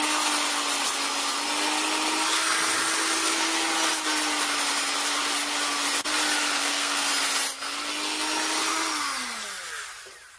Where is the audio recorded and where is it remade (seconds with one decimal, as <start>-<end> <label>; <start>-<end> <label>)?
0.0-6.6 recorded; 6.6-7.1 remade; 7.1-10.4 recorded